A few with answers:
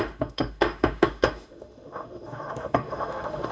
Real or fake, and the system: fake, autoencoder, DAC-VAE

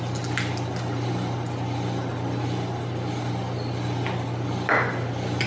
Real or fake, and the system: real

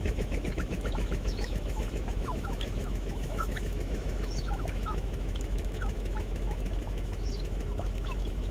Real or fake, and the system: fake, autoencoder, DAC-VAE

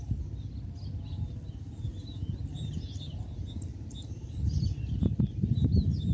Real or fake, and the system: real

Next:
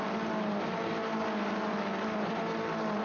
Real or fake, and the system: real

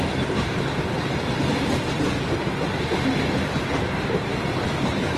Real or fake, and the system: real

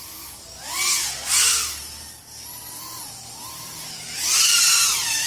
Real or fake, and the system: real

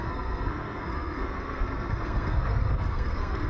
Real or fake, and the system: fake, codec, SNAC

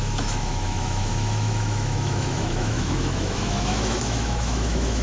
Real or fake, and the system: fake, autoencoder, DAC-VAE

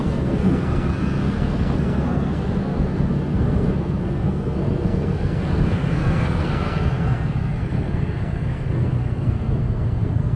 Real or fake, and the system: fake, codec, SNAC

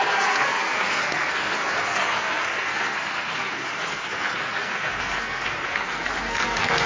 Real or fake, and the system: fake, codec, SNAC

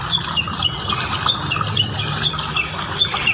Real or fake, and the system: fake, vocoder, BigVGAN v2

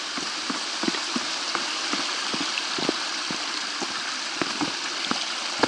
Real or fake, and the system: real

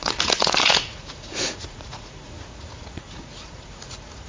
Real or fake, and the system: fake, vocoder, Vocos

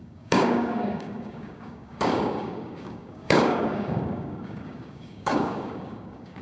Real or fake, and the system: fake, codec, DAC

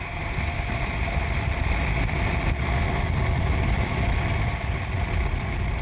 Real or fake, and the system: real